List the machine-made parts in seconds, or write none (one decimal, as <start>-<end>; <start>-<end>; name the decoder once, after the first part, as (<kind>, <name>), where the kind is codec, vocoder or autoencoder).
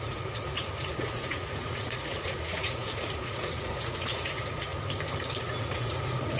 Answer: 0.0-4.7 (vocoder, Vocos); 5.4-6.4